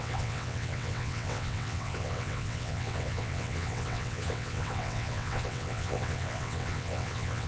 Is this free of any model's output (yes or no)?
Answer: no